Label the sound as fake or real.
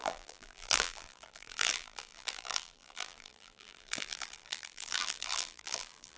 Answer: fake